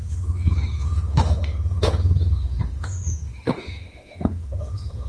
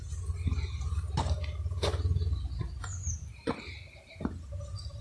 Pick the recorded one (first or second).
second